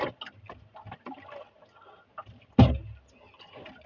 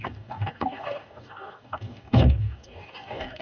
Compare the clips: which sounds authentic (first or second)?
first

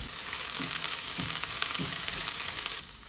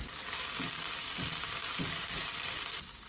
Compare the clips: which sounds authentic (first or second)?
second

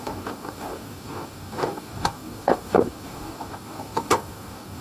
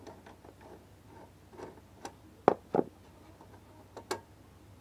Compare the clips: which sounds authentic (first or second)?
second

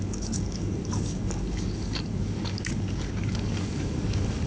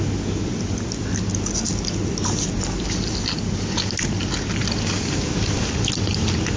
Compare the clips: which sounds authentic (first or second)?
second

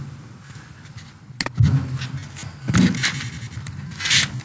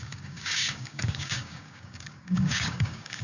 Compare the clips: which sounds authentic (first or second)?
first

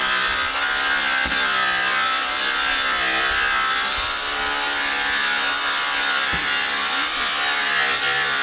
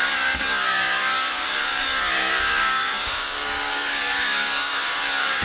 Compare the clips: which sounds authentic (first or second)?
first